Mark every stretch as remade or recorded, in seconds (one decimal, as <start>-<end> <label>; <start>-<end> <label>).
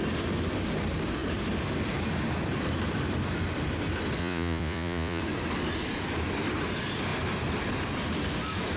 0.0-4.2 recorded; 4.2-5.2 remade; 5.2-8.8 recorded